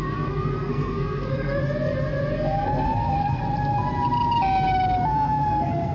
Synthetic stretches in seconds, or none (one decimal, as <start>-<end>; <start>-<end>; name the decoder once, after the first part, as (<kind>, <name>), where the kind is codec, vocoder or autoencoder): 0.0-1.6 (codec, SNAC); 2.3-3.4; 5.1-5.9